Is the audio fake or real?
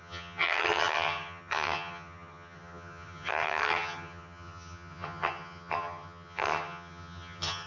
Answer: fake